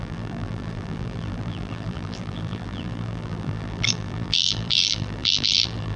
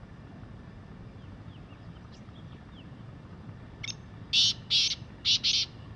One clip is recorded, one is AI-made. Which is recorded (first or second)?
second